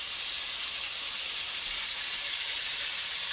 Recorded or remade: remade